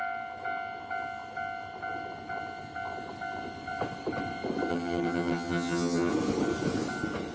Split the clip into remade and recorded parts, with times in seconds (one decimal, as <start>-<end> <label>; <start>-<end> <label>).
0.0-4.7 recorded; 4.7-6.1 remade; 6.1-7.3 recorded